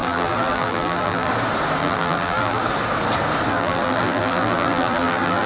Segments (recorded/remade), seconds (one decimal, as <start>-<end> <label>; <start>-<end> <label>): 0.0-1.3 remade; 1.3-1.8 recorded; 1.8-2.6 remade; 2.6-3.5 recorded; 3.5-5.5 remade